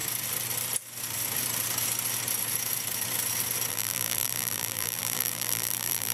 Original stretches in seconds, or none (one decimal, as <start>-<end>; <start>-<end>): 0.0-3.7